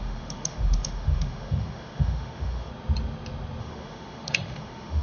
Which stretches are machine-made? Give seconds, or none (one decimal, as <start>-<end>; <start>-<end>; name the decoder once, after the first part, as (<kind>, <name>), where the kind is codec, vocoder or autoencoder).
0.0-2.7 (autoencoder, DAC-VAE); 3.6-5.0